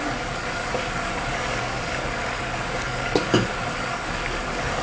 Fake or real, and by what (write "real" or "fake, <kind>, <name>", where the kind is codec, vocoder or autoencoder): fake, codec, DAC